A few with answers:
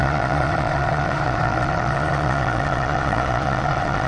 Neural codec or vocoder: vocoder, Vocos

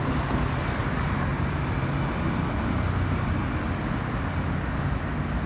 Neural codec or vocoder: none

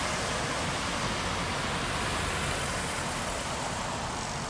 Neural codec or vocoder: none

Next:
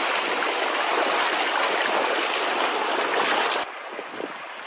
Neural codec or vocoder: none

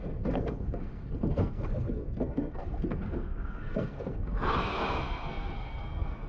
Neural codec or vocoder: codec, SNAC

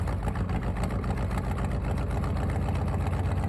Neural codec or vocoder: none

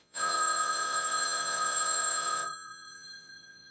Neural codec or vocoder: vocoder, Vocos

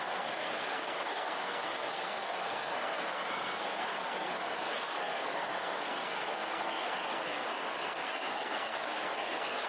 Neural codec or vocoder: codec, SNAC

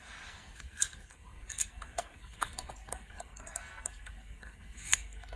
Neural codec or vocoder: codec, SNAC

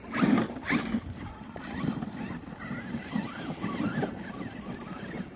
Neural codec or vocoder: none